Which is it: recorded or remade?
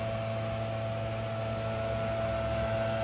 recorded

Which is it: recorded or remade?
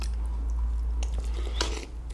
recorded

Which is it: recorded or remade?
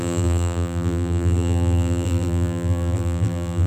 remade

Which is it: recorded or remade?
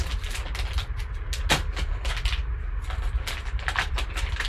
recorded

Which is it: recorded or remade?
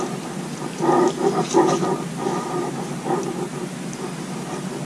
recorded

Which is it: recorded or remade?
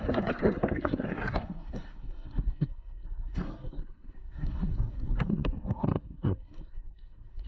remade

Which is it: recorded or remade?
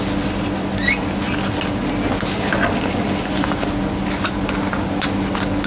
recorded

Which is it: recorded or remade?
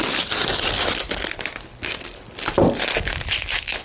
recorded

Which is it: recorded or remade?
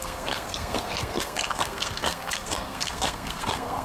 remade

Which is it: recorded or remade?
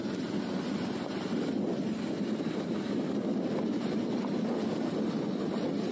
recorded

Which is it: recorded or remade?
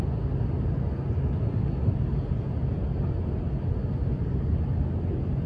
recorded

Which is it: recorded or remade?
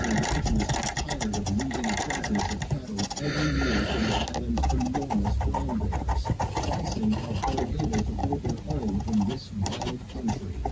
recorded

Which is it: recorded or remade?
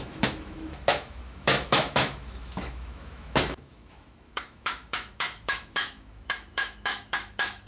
remade